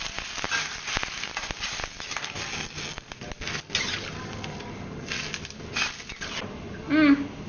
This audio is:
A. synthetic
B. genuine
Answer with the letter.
B